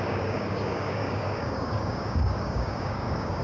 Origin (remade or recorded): remade